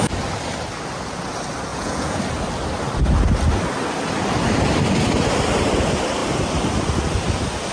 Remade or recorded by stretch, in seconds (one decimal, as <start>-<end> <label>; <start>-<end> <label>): 0.0-1.7 recorded; 1.7-2.2 remade; 2.2-7.7 recorded